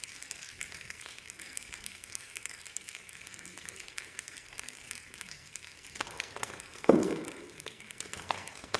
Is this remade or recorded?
remade